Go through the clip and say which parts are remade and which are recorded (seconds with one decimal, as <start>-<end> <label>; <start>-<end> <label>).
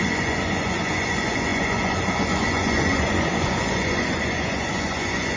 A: 0.0-5.4 remade